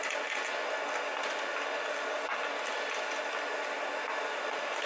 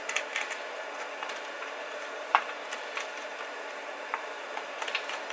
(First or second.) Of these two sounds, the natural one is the first